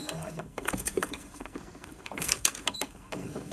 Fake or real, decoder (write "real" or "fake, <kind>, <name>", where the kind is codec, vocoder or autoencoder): fake, codec, SNAC